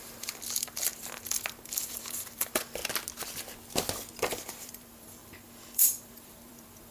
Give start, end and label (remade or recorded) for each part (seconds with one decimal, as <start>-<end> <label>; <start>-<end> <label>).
0.0-2.8 remade; 2.8-4.2 recorded; 4.2-6.9 remade